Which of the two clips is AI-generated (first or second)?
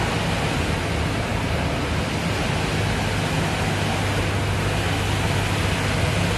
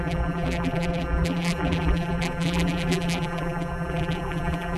second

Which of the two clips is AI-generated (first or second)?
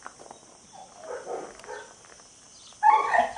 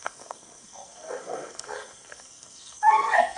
second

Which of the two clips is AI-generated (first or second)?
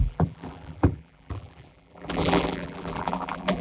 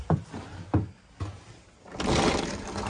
first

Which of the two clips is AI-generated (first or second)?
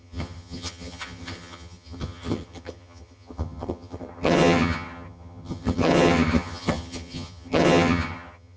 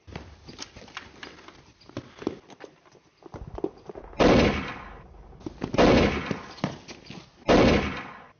first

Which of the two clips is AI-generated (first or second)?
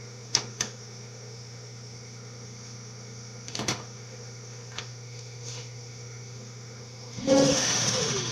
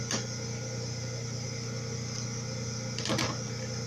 first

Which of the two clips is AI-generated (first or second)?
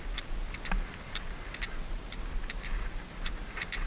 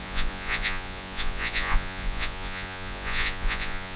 second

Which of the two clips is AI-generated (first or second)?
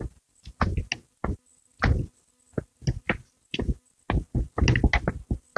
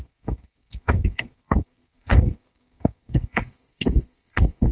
second